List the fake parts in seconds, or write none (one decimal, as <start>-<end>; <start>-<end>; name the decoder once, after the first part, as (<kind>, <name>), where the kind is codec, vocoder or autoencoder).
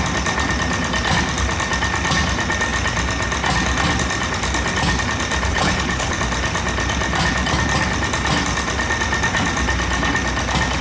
5.5-6.2 (codec, HILCodec)